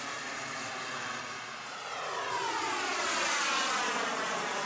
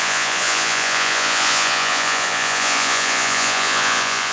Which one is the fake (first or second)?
second